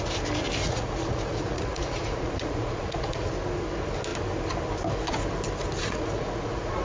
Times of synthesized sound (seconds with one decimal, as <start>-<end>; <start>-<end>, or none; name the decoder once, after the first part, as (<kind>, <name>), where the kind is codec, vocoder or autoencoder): 0.6-3.3 (vocoder, Vocos); 5.8-6.8